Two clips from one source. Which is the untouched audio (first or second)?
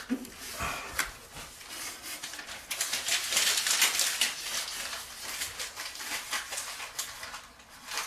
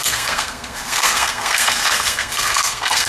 first